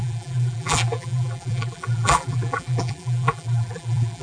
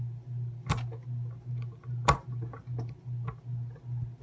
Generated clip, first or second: first